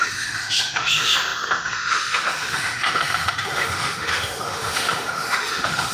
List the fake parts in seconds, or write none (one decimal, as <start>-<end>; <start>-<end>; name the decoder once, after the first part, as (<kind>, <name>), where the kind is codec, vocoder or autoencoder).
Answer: 0.0-5.9 (autoencoder, DAC-VAE)